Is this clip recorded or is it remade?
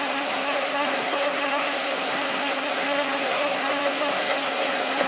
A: remade